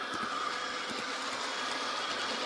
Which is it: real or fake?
real